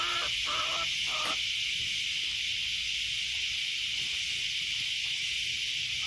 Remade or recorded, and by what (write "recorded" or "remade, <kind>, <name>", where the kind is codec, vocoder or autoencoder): recorded